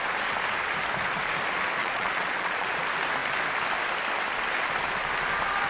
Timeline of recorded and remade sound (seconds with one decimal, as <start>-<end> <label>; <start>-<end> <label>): 0.0-1.8 recorded; 1.8-2.8 remade; 2.8-5.7 recorded